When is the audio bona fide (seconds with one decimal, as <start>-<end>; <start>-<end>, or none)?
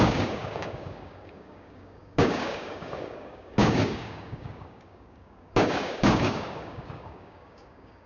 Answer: none